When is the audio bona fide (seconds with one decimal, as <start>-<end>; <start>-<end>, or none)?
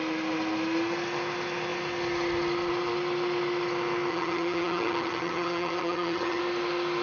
0.0-4.1; 6.4-7.0